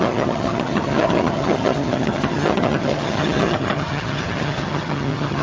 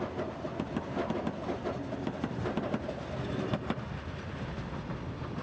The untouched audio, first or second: second